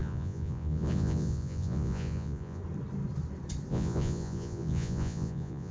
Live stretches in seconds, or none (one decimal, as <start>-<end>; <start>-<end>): 2.6-3.7